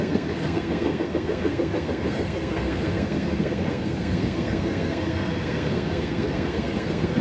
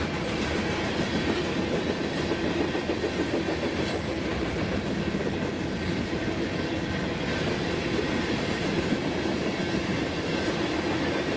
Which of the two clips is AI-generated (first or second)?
first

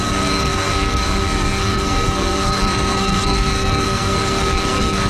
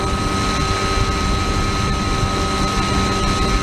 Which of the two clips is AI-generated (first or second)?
first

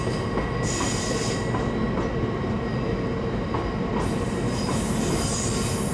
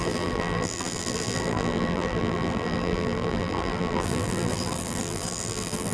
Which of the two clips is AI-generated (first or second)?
second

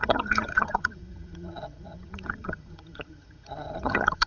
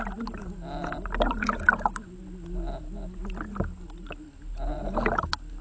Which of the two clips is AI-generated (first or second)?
first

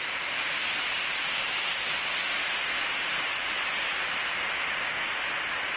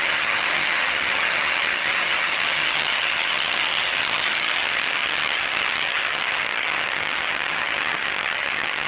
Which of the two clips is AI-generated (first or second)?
second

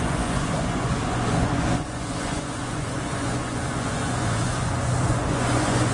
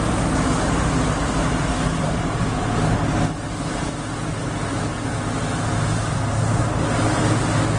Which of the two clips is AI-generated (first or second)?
first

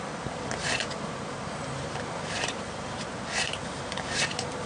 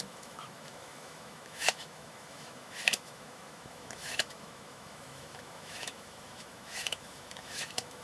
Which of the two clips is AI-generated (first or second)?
second